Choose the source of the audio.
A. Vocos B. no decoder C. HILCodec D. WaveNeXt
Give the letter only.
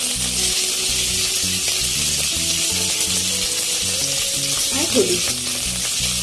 B